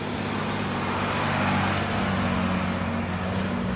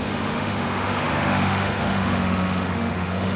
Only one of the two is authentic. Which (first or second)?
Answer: first